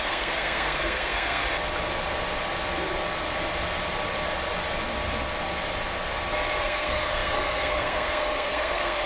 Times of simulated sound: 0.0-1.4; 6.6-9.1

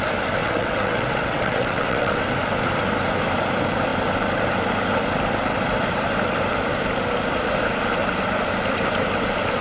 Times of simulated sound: 0.4-2.2

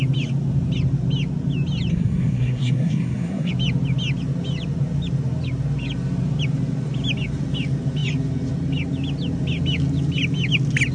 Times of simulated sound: 1.9-3.5

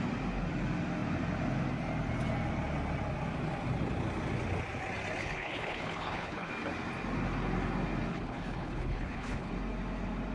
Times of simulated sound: 5.2-6.5; 8.1-9.5

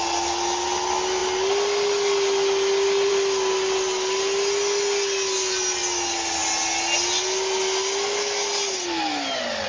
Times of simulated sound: none

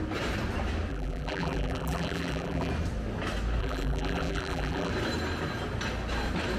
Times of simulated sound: 0.9-2.7; 3.6-4.9

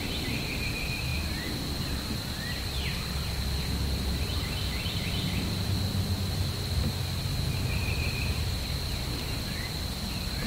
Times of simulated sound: 7.8-8.4